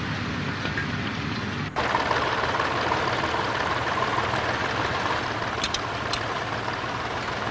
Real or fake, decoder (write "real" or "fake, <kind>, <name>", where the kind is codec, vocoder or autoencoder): real